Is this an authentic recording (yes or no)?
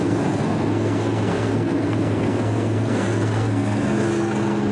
no